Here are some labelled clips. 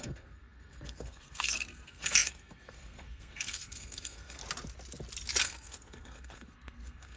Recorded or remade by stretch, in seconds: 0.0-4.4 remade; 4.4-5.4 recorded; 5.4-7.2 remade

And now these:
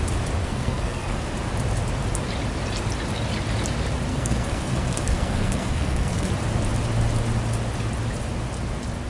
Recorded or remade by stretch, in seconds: 0.0-0.4 recorded; 0.4-1.2 remade; 1.2-4.1 recorded; 4.1-6.3 remade; 6.3-9.1 recorded

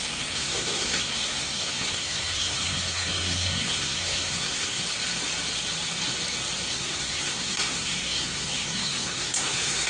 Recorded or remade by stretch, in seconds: 0.0-4.8 remade; 4.8-6.7 recorded; 6.7-9.9 remade